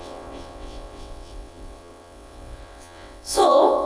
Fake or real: fake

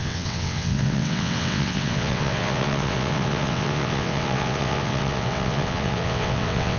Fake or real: fake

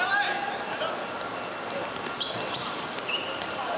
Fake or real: real